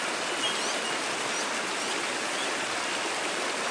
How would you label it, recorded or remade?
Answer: recorded